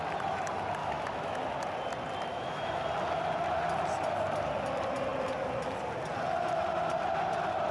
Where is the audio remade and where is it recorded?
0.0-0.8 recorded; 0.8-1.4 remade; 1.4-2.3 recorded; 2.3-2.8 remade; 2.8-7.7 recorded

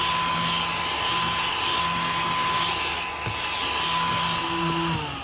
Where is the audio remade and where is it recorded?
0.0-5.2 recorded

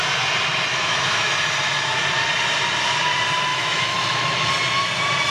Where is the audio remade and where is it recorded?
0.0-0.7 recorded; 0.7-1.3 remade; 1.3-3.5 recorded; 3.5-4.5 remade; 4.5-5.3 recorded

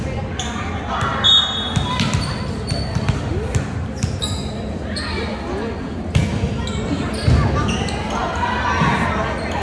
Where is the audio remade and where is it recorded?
0.0-9.6 recorded

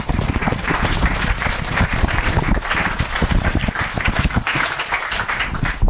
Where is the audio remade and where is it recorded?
0.0-3.9 recorded; 3.9-5.4 remade; 5.4-5.9 recorded